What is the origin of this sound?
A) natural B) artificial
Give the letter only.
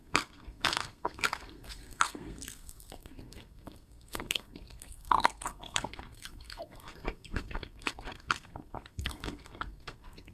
B